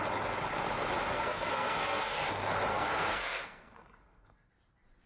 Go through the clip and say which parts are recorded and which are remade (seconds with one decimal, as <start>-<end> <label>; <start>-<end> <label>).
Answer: 0.0-1.1 recorded; 1.1-2.3 remade; 2.3-2.7 recorded; 2.7-4.5 remade; 4.5-5.1 recorded